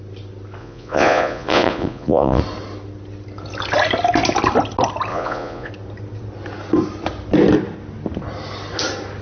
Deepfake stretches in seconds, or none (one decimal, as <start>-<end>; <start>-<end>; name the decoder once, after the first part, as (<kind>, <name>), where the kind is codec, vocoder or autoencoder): 0.6-2.4 (vocoder, Vocos); 5.1-5.7